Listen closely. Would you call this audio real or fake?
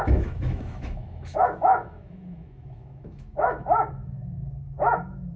fake